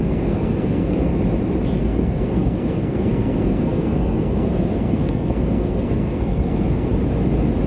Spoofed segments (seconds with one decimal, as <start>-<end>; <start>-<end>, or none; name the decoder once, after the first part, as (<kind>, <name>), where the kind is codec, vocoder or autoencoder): 0.0-1.1 (codec, SNAC); 1.8-6.9

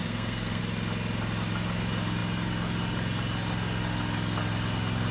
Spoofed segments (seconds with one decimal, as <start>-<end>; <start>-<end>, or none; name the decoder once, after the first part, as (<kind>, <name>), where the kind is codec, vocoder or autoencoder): 0.0-0.6 (codec, SNAC)

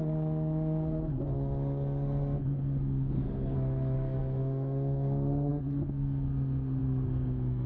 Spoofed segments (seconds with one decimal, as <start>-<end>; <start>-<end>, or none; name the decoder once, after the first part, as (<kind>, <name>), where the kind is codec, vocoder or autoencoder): 0.0-7.7 (codec, SNAC)

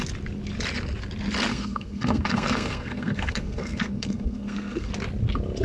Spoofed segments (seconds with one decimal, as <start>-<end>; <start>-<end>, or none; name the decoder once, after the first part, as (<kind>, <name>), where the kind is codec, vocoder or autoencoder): 1.5-4.9 (codec, SNAC)

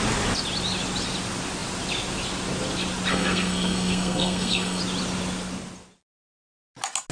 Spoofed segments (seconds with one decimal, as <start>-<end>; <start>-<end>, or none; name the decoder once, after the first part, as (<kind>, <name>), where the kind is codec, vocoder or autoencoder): 3.1-4.8 (codec, SNAC)

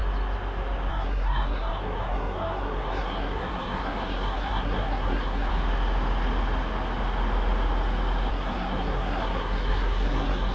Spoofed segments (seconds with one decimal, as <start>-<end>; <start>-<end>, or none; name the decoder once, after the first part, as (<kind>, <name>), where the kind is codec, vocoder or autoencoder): 0.9-5.5 (codec, SNAC); 8.3-10.5

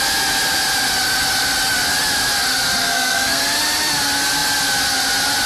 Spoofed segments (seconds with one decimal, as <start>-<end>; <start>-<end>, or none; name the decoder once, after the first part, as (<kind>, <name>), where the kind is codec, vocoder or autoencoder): 2.8-3.4 (codec, SNAC)

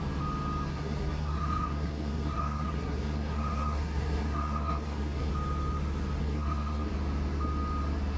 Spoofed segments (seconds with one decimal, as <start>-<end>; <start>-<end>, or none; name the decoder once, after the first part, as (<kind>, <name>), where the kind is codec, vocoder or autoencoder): 0.7-5.3 (codec, SNAC); 6.2-6.9